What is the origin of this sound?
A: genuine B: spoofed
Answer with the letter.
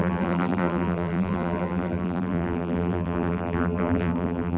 B